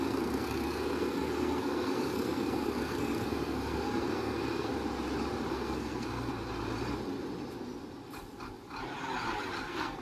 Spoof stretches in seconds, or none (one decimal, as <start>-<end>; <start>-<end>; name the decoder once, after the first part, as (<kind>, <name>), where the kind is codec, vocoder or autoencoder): 0.0-4.7 (codec, SNAC); 5.5-6.3; 9.6-10.0